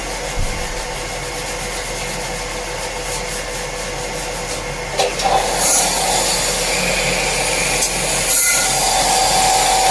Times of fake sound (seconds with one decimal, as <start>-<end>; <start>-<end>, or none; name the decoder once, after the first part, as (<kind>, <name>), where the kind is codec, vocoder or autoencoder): none

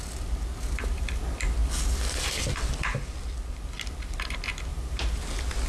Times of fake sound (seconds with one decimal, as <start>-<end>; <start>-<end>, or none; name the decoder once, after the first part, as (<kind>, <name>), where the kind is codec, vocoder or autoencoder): 4.7-5.2 (vocoder, BigVGAN v2)

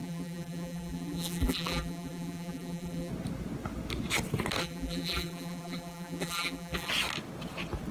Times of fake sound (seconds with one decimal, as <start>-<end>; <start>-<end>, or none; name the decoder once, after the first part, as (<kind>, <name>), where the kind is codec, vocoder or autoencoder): 0.0-3.1 (vocoder, BigVGAN v2); 4.6-6.9

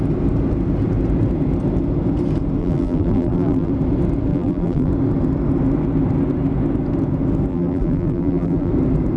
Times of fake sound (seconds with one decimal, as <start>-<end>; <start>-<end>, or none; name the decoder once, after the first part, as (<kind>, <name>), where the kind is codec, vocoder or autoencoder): 2.6-3.7 (vocoder, BigVGAN v2); 4.3-4.9; 7.5-8.7

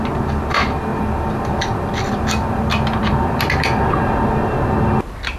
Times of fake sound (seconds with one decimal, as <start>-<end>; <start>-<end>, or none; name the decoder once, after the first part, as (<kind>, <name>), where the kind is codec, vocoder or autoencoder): 0.9-4.1 (vocoder, BigVGAN v2)

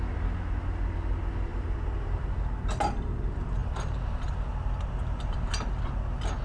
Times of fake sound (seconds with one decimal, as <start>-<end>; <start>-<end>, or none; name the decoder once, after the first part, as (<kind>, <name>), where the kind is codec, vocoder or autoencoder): 1.5-2.4 (vocoder, BigVGAN v2); 3.6-4.3